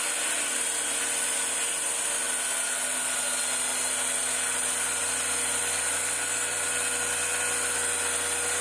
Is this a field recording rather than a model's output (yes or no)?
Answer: yes